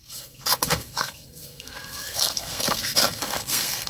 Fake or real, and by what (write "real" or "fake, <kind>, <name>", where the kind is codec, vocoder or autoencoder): fake, codec, SNAC